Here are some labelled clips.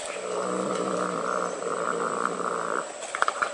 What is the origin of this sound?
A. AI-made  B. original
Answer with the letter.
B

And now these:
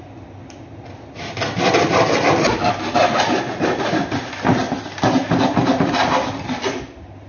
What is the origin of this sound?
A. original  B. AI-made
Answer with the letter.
A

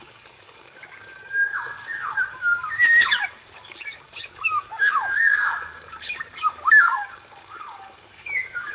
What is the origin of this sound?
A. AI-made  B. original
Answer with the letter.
A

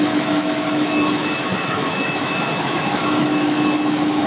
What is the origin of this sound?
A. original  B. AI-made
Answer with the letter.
B